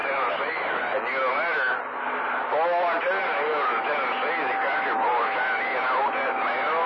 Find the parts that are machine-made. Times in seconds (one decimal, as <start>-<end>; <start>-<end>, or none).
none